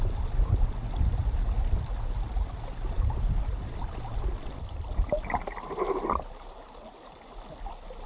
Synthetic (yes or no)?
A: no